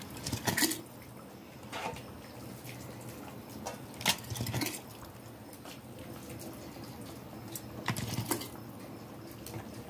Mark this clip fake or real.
real